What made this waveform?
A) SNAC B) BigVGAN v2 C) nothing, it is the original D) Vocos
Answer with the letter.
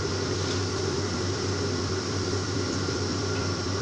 B